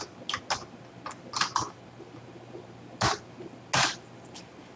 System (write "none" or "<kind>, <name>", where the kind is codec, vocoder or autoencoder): none